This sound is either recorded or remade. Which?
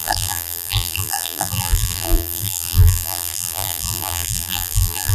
remade